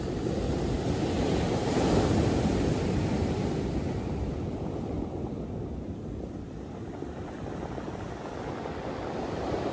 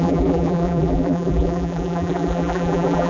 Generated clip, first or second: second